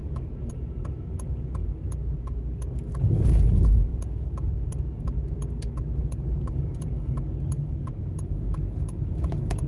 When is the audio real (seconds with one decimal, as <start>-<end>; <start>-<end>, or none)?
none